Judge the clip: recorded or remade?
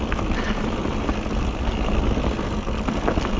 recorded